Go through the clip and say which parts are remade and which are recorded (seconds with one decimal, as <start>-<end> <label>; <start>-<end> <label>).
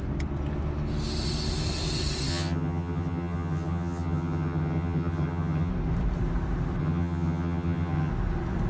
0.0-2.3 recorded; 2.3-5.7 remade; 5.7-6.8 recorded; 6.8-8.1 remade; 8.1-8.7 recorded